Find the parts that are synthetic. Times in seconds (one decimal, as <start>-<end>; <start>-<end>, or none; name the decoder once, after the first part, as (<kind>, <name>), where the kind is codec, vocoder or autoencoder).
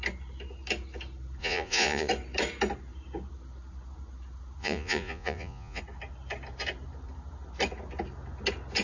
1.4-2.1 (vocoder, Vocos); 4.6-5.8